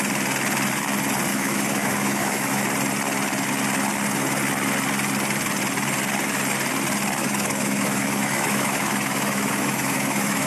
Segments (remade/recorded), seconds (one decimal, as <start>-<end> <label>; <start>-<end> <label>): 0.0-1.3 recorded; 1.3-2.6 remade; 2.6-7.2 recorded; 7.2-10.5 remade